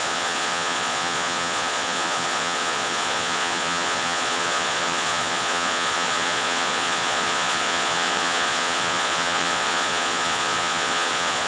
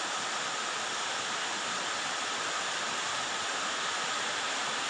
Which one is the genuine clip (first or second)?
second